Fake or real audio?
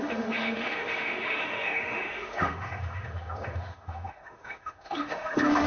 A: fake